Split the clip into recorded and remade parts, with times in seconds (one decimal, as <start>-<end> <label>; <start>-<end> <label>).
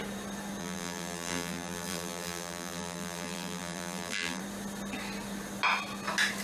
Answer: 0.0-0.6 recorded; 0.6-4.4 remade; 4.4-6.4 recorded